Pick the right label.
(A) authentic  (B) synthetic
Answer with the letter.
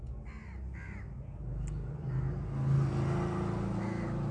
A